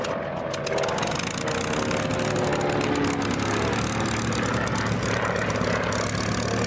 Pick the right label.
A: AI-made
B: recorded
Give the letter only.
B